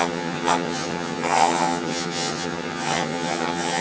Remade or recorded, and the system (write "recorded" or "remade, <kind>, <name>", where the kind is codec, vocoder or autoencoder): remade, vocoder, HiFi-GAN